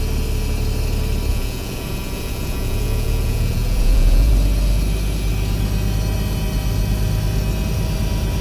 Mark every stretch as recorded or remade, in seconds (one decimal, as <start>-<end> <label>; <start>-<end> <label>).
0.0-1.3 recorded; 1.3-4.3 remade; 4.3-8.4 recorded